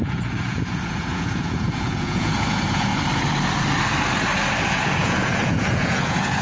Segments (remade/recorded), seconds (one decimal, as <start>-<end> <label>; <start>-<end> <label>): 0.0-2.9 remade; 2.9-4.6 recorded; 4.6-6.4 remade